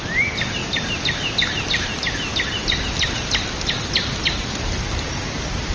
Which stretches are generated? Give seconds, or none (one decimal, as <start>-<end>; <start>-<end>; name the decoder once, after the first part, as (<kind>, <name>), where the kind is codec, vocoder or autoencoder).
none